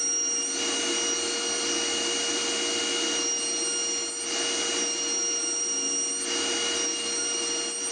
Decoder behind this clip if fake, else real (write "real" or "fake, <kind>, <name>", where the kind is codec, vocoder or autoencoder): real